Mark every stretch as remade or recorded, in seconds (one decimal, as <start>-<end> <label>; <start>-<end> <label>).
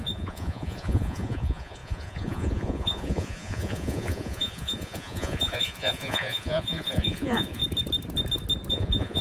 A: 0.0-7.6 remade; 7.6-8.7 recorded; 8.7-9.2 remade